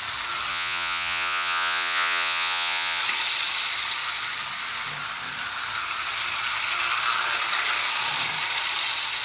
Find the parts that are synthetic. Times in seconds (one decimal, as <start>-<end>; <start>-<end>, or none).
0.5-3.0